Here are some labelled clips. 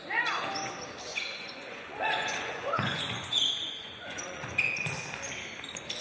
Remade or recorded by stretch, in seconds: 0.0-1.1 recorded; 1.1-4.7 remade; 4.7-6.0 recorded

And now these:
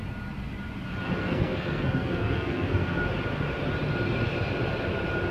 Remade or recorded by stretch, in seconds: 0.0-1.2 recorded; 1.2-3.0 remade; 3.0-5.3 recorded

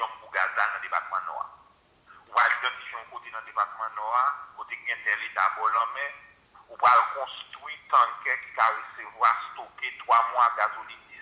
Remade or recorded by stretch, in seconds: 0.0-5.0 recorded; 5.0-5.8 remade; 5.8-11.2 recorded

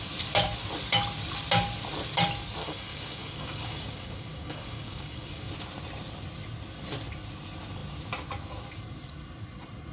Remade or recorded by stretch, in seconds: 0.0-2.6 recorded; 2.6-5.5 remade; 5.5-9.9 recorded